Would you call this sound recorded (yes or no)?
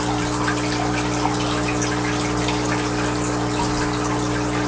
yes